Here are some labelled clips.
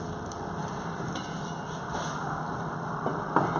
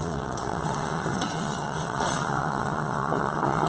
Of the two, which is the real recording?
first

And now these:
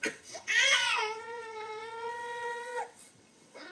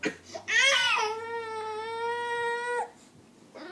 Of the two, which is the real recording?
second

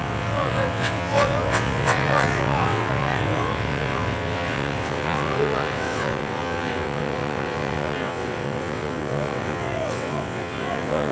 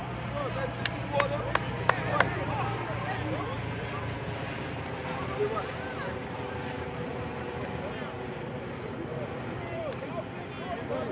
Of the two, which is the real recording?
second